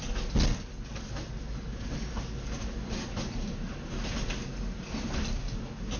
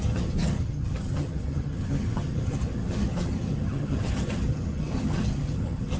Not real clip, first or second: second